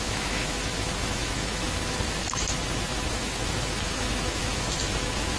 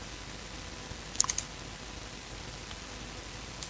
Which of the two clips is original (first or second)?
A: second